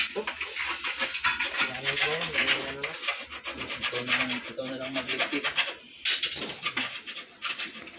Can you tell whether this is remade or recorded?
recorded